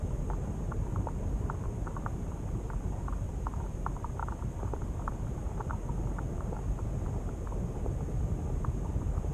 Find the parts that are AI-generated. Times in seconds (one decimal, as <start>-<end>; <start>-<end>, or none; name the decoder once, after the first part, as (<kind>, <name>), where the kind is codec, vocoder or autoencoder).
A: 4.2-5.1 (vocoder, BigVGAN v2)